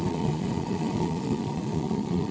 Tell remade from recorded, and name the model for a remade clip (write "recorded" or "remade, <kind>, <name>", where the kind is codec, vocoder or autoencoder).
remade, vocoder, Vocos